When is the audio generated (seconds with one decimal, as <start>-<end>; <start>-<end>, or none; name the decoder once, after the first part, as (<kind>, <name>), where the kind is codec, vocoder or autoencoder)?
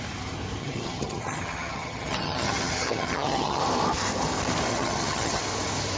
0.6-3.6 (vocoder, HiFi-GAN); 4.7-5.4